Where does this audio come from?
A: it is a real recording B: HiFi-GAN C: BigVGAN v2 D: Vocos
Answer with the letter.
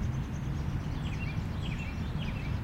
A